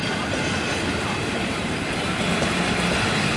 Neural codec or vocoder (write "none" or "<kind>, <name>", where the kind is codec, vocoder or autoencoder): none